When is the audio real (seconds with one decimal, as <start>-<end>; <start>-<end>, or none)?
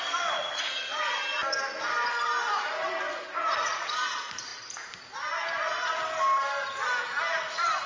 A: 0.0-7.9